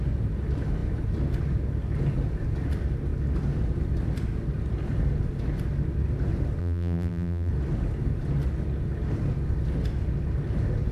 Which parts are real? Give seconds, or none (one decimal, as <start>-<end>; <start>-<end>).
0.0-6.6; 7.5-10.9